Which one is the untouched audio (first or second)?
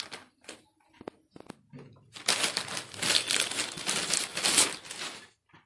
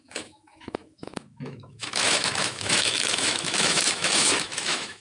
first